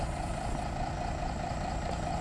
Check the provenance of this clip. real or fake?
real